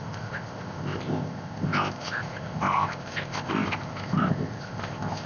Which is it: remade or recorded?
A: remade